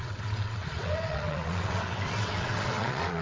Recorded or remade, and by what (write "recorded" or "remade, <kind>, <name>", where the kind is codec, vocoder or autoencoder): remade, vocoder, WaveNeXt